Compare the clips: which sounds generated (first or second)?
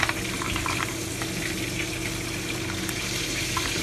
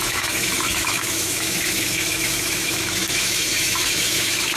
second